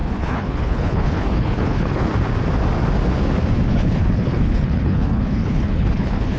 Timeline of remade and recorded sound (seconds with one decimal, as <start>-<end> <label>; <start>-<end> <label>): 0.0-2.1 remade; 2.1-3.7 recorded; 3.7-6.4 remade